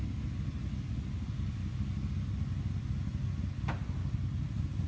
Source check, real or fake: real